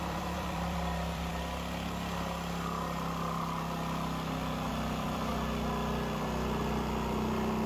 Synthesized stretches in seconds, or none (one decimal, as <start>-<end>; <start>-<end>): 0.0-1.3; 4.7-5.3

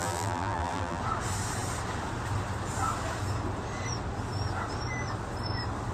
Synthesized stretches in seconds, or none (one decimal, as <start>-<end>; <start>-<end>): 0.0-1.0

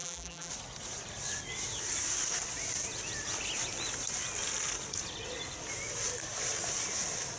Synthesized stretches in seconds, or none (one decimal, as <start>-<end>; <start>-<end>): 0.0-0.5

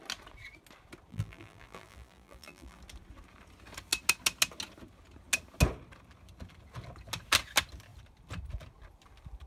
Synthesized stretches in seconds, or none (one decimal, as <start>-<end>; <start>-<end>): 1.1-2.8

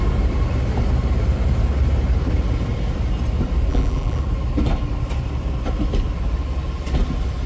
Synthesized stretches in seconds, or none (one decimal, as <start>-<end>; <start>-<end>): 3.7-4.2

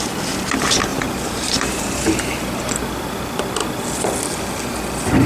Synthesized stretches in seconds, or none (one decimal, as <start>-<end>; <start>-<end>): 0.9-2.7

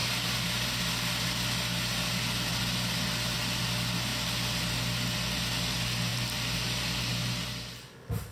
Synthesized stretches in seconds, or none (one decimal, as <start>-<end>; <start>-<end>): 6.1-7.1